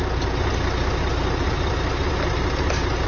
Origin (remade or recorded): recorded